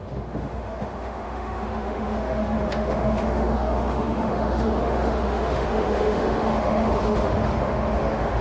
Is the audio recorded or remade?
remade